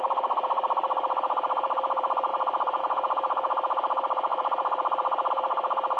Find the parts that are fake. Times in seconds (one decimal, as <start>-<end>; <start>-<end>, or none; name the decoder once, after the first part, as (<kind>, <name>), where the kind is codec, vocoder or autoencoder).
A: none

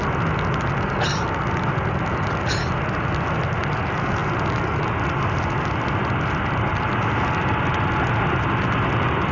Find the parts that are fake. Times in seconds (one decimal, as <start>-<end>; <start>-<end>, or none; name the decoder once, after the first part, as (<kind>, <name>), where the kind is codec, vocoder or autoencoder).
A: none